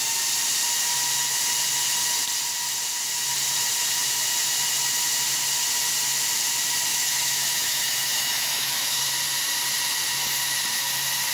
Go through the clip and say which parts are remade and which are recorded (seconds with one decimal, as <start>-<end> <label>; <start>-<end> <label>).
0.0-6.9 recorded; 6.9-9.0 remade; 9.0-11.3 recorded